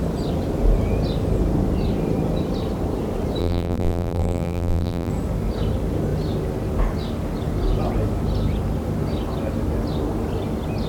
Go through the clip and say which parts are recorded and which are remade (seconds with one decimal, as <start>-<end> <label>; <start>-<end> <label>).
0.0-3.4 recorded; 3.4-5.1 remade; 5.1-10.9 recorded